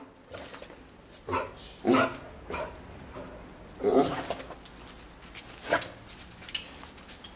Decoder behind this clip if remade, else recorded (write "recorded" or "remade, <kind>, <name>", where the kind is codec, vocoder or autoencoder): recorded